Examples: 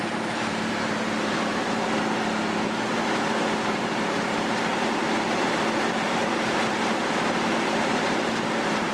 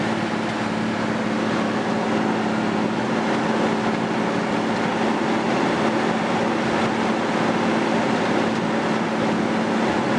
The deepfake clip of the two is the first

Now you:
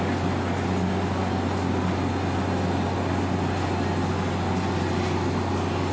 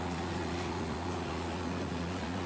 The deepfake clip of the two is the second